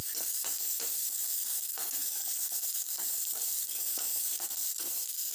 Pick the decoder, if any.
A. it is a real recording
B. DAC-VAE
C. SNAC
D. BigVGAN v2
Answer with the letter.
C